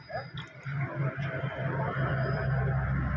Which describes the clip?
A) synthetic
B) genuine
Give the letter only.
B